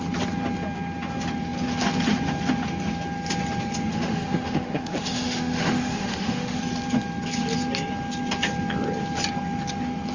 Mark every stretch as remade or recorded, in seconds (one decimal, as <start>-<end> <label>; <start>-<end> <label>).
0.0-3.9 recorded; 3.9-6.6 remade; 6.6-10.1 recorded